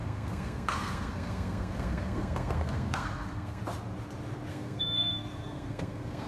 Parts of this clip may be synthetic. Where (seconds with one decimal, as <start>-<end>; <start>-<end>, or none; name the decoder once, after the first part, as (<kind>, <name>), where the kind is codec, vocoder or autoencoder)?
0.0-3.6 (codec, SNAC); 4.5-6.3

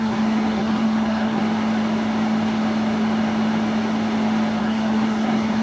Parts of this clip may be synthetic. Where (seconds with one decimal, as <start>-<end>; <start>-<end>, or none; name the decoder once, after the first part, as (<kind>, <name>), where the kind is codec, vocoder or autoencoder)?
0.0-1.4 (codec, SNAC); 4.6-5.6

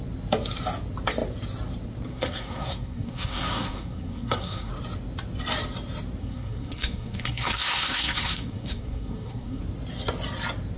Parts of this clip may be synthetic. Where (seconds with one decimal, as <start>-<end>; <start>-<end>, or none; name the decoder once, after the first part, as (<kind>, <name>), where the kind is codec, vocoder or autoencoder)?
2.1-4.7 (codec, SNAC); 6.2-9.6

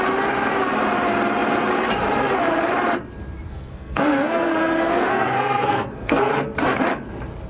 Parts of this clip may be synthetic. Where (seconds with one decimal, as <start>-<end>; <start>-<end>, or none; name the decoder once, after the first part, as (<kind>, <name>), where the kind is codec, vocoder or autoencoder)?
3.5-6.3 (codec, SNAC)

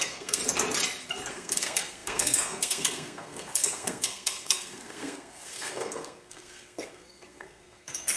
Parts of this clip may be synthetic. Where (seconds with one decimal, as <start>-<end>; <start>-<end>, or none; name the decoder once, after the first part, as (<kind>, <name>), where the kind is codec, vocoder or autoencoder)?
0.0-0.4 (codec, SNAC); 1.3-8.2

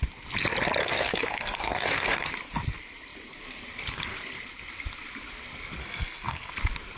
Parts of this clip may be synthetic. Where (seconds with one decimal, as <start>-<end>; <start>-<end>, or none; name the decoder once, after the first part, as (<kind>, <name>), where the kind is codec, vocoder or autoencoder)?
0.8-2.3 (codec, SNAC); 5.8-6.5

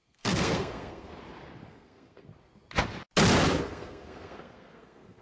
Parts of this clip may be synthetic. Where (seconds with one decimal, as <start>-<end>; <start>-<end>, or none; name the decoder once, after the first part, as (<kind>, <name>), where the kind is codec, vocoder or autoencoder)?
0.0-1.1 (codec, SNAC); 1.7-2.3; 3.6-5.2